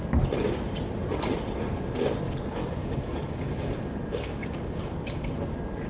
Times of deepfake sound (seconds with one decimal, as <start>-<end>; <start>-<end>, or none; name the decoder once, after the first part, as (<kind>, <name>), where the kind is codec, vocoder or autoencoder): 2.8-5.3 (codec, DAC)